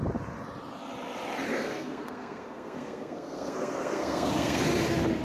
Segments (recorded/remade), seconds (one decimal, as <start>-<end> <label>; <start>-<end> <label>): 0.0-1.5 recorded; 1.5-4.6 remade; 4.6-5.2 recorded